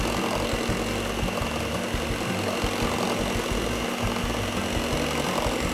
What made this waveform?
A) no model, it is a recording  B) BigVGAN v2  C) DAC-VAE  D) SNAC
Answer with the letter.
A